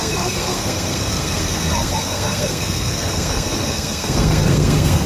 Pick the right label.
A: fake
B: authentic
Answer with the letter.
A